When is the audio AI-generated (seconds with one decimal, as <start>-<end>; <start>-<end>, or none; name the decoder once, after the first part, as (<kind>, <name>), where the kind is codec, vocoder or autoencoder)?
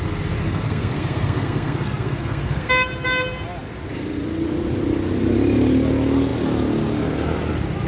0.4-2.7 (codec, SNAC)